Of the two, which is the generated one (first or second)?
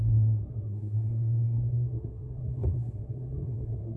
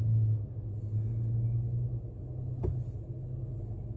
first